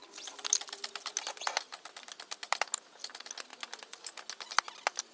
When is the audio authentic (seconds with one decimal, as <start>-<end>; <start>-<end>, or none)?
0.0-5.1